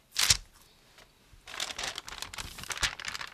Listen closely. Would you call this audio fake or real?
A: real